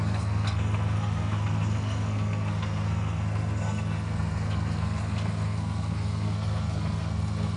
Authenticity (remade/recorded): remade